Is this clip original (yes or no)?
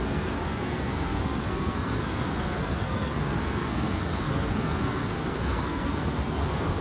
no